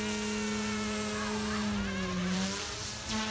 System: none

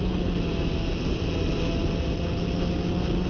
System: none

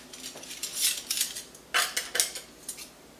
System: none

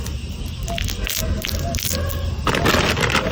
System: none